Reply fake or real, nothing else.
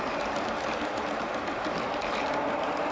fake